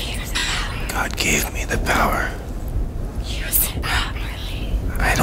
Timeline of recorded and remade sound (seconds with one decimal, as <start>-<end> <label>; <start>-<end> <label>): 0.0-4.4 recorded; 4.4-5.2 remade